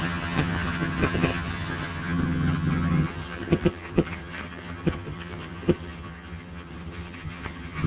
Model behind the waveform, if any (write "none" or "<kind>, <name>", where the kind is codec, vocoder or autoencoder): vocoder, HiFi-GAN